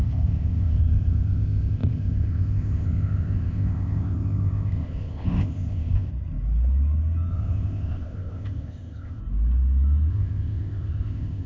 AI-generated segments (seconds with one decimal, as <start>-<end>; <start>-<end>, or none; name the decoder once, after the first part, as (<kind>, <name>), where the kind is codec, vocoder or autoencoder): 0.0-6.1 (codec, ZipCodec); 7.3-9.2; 10.1-11.5